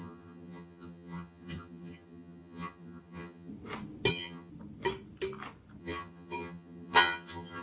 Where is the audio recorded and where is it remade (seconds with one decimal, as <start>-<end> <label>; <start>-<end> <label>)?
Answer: 0.0-3.5 remade; 3.5-4.1 recorded; 4.1-4.5 remade; 4.5-5.8 recorded; 5.8-7.6 remade